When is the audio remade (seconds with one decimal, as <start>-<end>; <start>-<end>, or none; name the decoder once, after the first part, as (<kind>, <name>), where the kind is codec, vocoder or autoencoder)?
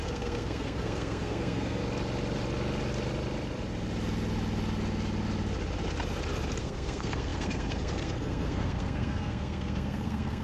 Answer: 0.0-1.8 (codec, SNAC); 6.6-10.4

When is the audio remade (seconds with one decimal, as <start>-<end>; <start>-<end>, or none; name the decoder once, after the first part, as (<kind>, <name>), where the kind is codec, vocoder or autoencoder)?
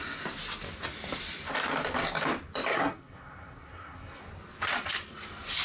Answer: 2.7-4.2 (codec, SNAC)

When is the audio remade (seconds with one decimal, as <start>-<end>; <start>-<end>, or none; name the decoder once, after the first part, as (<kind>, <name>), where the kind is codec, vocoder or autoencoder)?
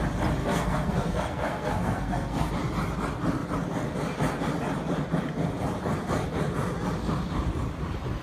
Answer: 0.4-2.5 (codec, SNAC)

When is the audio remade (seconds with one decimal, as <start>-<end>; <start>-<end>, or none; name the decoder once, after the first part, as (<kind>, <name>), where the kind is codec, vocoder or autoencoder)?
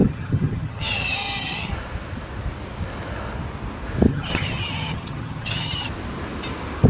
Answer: 0.0-1.7 (vocoder, HiFi-GAN); 4.1-5.9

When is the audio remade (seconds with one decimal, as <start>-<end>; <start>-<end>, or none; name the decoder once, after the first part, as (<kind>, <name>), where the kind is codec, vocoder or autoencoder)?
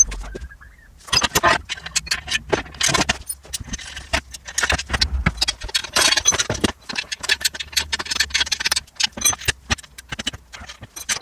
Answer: 5.8-8.8 (vocoder, BigVGAN v2)